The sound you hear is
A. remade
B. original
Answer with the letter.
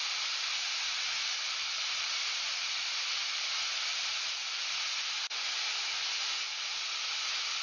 B